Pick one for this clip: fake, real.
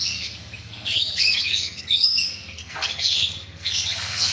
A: fake